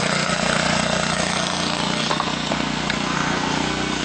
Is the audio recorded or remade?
remade